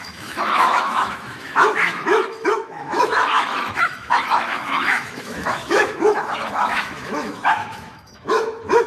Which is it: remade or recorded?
remade